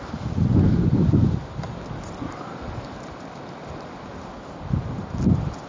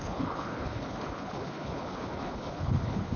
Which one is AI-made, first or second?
second